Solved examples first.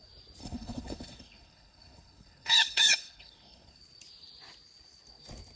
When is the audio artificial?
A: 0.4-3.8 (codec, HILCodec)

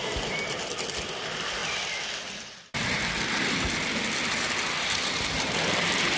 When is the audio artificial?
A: none

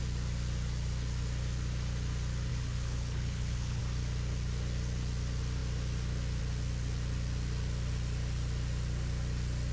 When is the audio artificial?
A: 2.5-3.8 (codec, HILCodec)

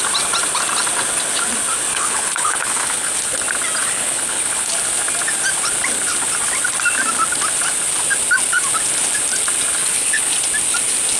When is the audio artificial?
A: 1.9-3.1 (codec, HILCodec); 3.8-4.7; 9.8-10.3

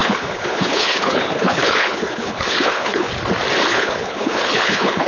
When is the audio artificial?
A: 0.0-3.1 (codec, HILCodec); 3.7-5.1

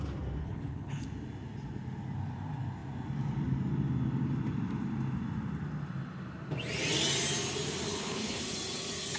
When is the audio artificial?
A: 0.4-1.0 (codec, HILCodec); 7.9-8.4

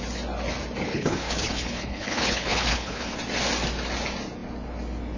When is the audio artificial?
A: 0.9-3.1 (codec, HILCodec)